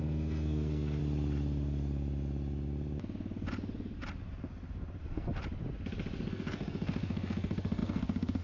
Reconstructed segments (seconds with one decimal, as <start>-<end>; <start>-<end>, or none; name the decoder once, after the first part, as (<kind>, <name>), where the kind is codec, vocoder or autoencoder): 0.0-1.0 (codec, SNAC); 5.0-5.4; 6.3-8.4